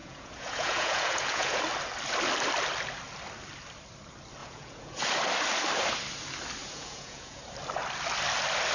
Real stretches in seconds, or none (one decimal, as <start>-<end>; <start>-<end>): 1.6-4.4; 5.0-6.6; 7.4-8.7